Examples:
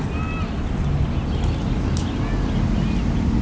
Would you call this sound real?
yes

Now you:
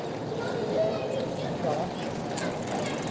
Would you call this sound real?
yes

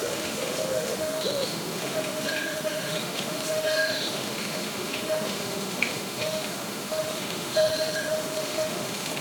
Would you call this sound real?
no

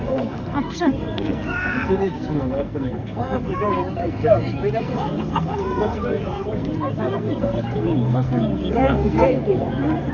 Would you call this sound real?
no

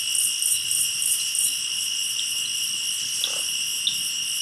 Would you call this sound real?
yes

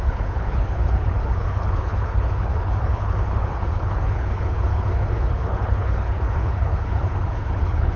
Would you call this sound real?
no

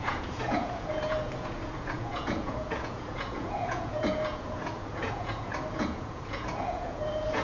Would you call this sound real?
no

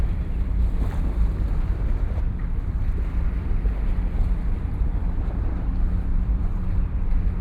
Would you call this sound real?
no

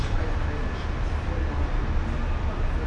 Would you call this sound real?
yes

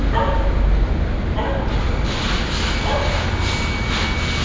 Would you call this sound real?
yes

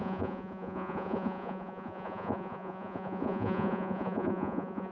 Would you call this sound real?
no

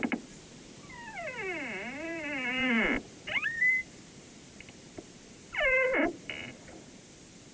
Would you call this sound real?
no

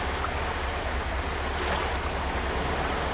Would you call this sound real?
yes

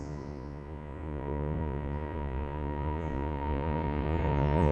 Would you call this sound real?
no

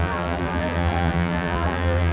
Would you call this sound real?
no